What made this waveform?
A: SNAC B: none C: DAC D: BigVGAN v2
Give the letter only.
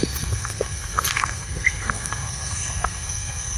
A